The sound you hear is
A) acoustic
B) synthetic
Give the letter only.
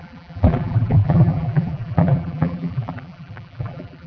B